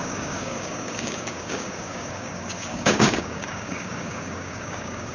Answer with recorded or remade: remade